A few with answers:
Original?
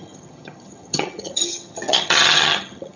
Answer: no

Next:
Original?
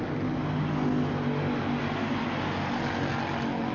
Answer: yes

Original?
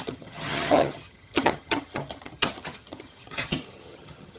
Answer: no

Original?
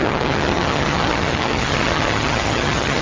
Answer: no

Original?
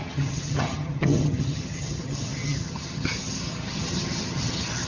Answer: no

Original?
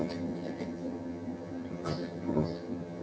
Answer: no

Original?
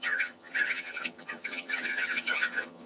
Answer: no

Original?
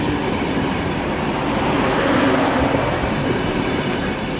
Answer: yes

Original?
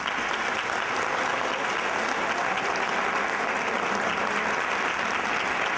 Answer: yes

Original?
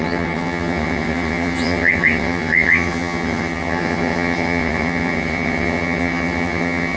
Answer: no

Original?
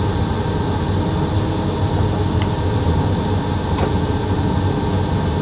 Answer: yes